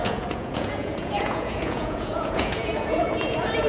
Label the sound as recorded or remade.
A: remade